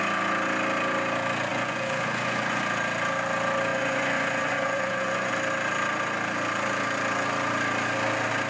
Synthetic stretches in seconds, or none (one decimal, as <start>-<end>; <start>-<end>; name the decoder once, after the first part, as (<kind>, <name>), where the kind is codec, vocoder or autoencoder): 1.5-2.6 (vocoder, Vocos); 3.7-5.3